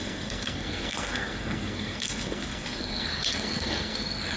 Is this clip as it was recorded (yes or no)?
no